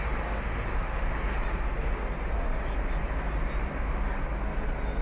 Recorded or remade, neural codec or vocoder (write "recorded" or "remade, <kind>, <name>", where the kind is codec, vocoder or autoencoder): recorded